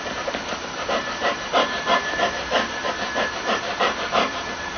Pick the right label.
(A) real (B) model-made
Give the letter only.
B